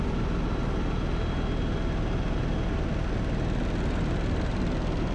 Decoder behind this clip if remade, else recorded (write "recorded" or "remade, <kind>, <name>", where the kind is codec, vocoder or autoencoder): recorded